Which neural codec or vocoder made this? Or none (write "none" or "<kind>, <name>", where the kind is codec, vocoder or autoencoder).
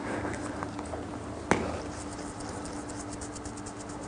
none